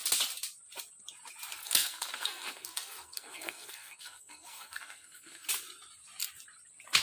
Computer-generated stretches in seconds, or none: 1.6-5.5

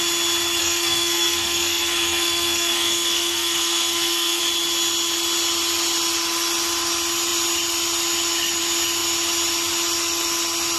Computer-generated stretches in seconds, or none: 0.6-4.4